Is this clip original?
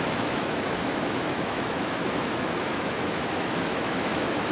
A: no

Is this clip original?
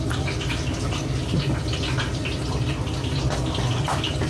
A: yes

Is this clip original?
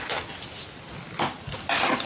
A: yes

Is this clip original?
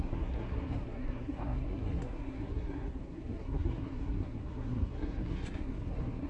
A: no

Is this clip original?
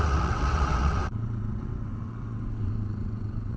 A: no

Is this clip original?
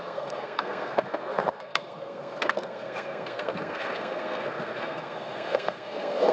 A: no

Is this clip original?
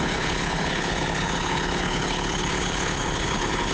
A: no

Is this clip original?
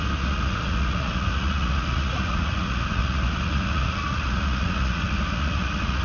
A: no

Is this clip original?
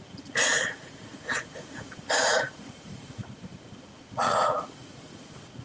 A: no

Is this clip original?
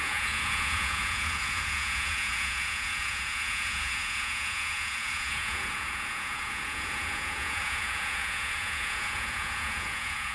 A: no